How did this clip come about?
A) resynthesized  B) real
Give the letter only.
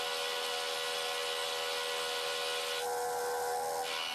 B